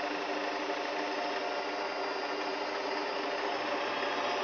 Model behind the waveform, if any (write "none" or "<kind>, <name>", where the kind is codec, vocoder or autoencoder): none